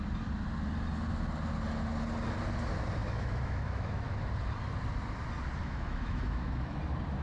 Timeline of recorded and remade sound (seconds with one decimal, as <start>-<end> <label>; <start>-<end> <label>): 0.0-3.0 recorded; 3.0-4.2 remade; 4.2-5.6 recorded; 5.6-6.8 remade; 6.8-7.2 recorded